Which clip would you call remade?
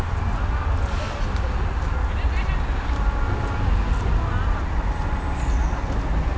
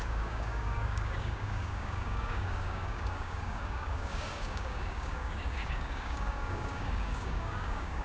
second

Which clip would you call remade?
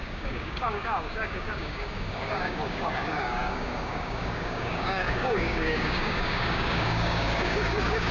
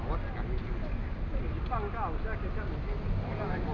first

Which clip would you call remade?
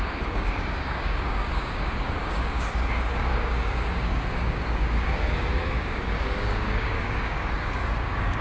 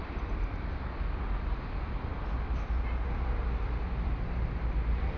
first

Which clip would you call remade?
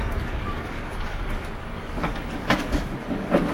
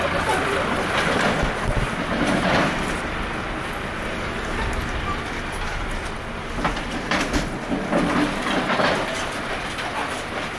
first